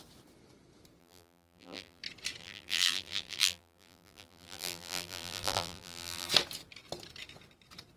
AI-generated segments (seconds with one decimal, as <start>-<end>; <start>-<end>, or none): 1.0-2.0; 2.4-6.3